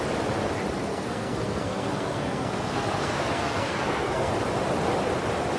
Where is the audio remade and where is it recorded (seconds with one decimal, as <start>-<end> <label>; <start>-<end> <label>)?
0.0-0.9 recorded; 0.9-4.3 remade; 4.3-5.6 recorded